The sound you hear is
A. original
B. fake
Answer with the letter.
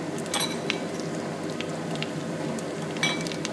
A